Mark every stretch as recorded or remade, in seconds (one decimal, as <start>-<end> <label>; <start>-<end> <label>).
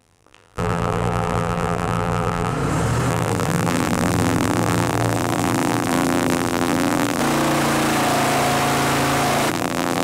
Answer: 0.0-2.5 remade; 2.5-3.1 recorded; 3.1-7.2 remade; 7.2-9.5 recorded; 9.5-10.0 remade